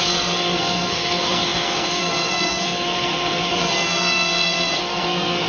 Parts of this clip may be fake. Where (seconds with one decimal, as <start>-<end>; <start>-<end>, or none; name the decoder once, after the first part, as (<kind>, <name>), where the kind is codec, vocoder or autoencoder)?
0.0-5.5 (codec, SNAC)